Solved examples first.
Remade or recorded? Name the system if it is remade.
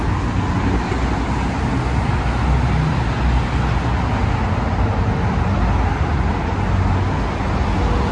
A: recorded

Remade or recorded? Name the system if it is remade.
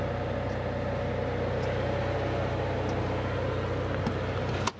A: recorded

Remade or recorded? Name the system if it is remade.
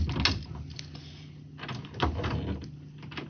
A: recorded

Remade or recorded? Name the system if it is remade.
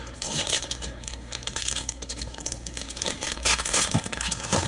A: remade, codec, SNAC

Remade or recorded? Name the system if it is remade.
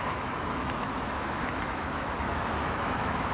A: remade, autoencoder, DAC-VAE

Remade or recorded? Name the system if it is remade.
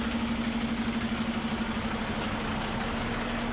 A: recorded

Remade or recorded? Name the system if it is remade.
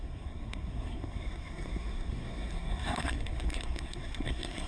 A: remade, codec, SNAC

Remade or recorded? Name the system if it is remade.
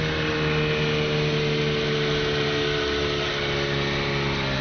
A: recorded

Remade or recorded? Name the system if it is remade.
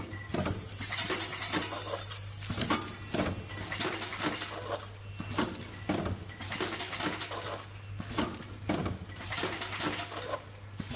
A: recorded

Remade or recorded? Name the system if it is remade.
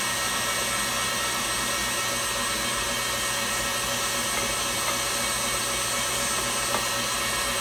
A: recorded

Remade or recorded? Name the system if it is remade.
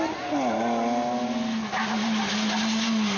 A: recorded